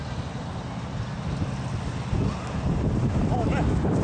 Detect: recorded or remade recorded